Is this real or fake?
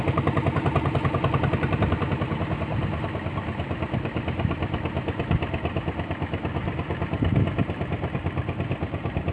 real